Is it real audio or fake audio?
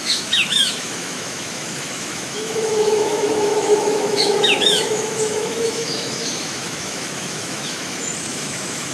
fake